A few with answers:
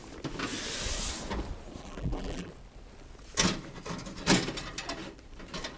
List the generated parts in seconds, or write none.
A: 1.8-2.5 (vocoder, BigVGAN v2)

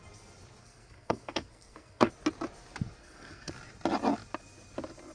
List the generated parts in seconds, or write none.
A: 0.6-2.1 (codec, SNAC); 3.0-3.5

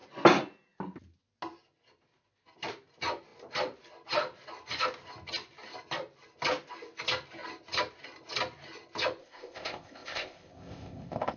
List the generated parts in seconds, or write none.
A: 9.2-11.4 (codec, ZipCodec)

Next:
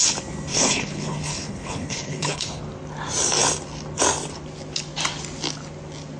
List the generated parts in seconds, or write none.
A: 0.5-2.6 (codec, HILCodec)